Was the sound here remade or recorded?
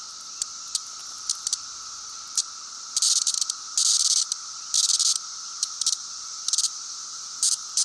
recorded